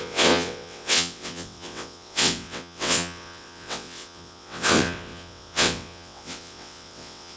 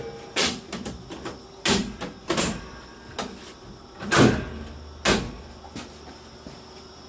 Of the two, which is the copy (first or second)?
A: first